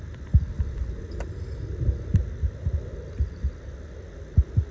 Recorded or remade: recorded